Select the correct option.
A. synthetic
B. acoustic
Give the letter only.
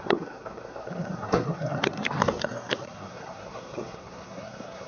A